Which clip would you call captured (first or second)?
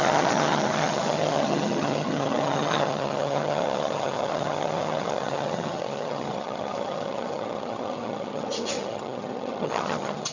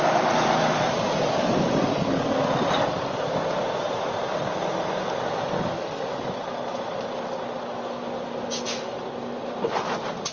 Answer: second